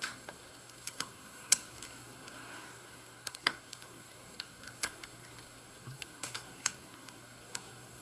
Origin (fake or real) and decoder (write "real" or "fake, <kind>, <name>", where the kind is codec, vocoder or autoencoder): fake, codec, SNAC